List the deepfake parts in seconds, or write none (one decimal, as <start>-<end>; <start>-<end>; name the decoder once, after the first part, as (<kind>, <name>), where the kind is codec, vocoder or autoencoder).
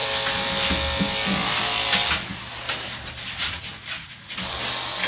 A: 3.4-4.3 (vocoder, Vocos)